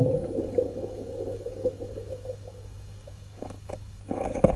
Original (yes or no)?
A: no